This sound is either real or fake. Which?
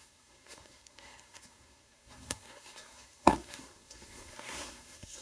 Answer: fake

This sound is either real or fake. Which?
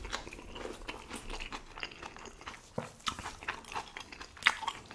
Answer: real